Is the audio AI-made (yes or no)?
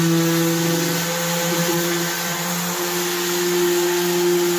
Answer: no